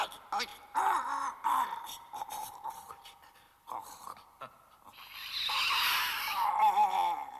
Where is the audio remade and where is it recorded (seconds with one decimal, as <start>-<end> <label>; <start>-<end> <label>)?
0.0-0.5 recorded; 0.5-2.9 remade; 2.9-7.4 recorded